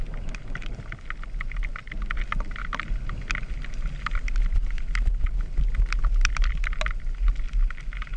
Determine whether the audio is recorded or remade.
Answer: recorded